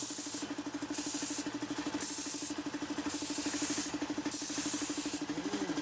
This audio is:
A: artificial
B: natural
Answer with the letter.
B